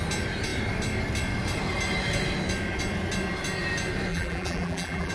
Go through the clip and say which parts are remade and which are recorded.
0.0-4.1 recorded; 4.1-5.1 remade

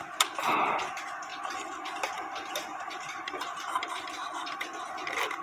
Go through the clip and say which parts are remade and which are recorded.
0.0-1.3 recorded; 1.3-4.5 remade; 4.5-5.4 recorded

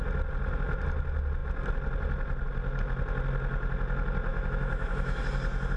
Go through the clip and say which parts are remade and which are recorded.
0.0-4.3 recorded; 4.3-5.2 remade; 5.2-5.8 recorded

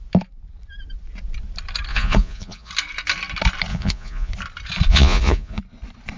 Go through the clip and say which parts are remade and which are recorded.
0.0-1.9 recorded; 1.9-2.7 remade; 2.7-3.7 recorded; 3.7-4.3 remade; 4.3-4.9 recorded; 4.9-5.6 remade; 5.6-6.2 recorded

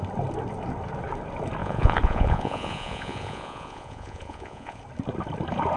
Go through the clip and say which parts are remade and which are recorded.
0.0-1.6 recorded; 1.6-4.8 remade; 4.8-5.8 recorded

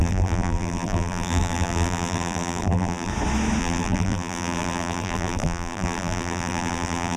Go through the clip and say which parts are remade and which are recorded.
0.0-3.1 remade; 3.1-3.6 recorded; 3.6-7.2 remade

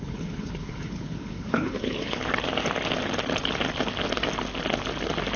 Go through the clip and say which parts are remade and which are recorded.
0.0-2.2 remade; 2.2-5.4 recorded